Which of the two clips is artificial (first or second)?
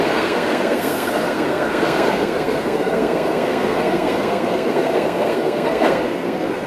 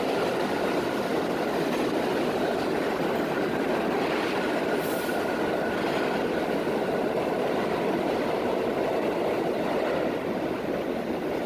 first